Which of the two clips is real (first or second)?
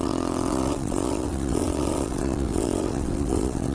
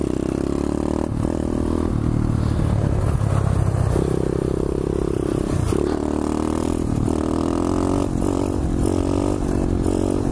second